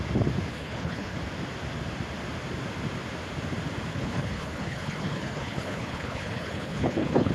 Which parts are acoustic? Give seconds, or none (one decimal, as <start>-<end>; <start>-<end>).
0.0-0.5; 1.2-3.9